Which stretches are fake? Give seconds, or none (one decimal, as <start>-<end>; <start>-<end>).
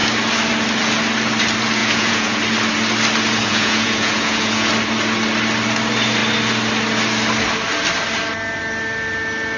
1.8-2.4; 3.4-4.7